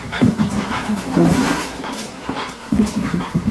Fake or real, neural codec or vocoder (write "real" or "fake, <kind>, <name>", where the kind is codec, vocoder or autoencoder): fake, codec, SNAC